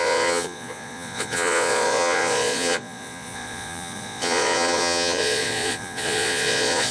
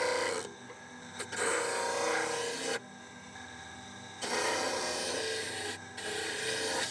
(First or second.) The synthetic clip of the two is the first